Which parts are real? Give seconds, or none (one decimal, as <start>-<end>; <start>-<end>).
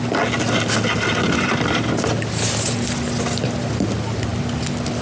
0.0-5.0